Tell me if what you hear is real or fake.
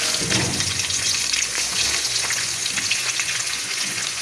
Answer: fake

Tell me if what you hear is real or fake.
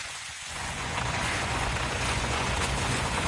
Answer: fake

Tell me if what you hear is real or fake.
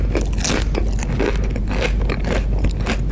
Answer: real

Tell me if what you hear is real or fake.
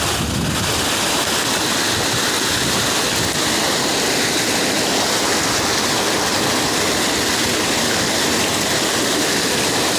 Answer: real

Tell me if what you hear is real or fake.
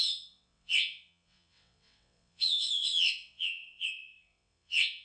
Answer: fake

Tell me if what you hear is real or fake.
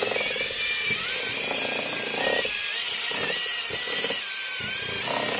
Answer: fake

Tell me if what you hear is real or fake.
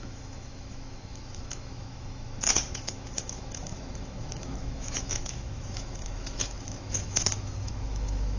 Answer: fake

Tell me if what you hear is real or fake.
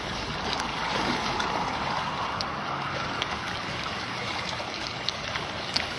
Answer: fake